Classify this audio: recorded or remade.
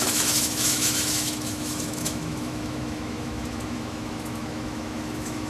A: remade